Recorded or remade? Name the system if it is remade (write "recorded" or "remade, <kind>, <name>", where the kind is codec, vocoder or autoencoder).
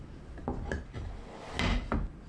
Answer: recorded